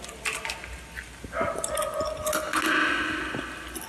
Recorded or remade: recorded